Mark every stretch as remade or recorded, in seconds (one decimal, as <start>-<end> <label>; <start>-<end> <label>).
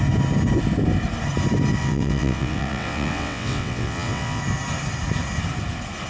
0.0-1.8 recorded; 1.8-4.4 remade; 4.4-6.1 recorded